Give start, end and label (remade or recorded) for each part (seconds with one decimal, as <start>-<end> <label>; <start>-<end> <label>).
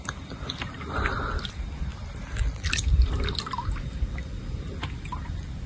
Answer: 0.0-5.7 recorded